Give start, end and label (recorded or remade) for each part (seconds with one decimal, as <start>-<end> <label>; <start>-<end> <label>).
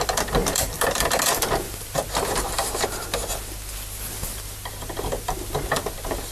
0.0-0.4 recorded; 0.4-1.4 remade; 1.4-6.3 recorded